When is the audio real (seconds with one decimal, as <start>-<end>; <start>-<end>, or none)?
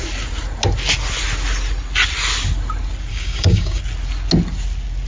0.0-3.1; 3.8-5.1